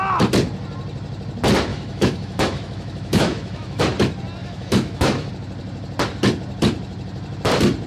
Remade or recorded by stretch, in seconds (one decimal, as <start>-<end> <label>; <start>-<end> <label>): 0.0-1.7 recorded; 1.7-3.8 remade; 3.8-4.4 recorded; 4.4-5.3 remade; 5.3-7.9 recorded